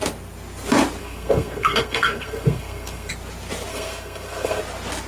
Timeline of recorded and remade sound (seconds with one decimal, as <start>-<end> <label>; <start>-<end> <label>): 0.0-1.0 recorded; 1.0-3.1 remade; 3.1-3.7 recorded; 3.7-4.6 remade; 4.6-5.1 recorded